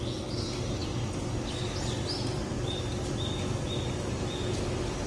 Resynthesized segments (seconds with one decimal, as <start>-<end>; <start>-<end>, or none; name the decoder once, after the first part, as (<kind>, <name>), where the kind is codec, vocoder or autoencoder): none